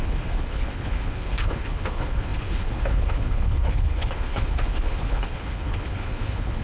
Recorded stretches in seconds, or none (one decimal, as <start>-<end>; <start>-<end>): none